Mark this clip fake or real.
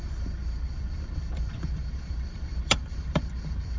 fake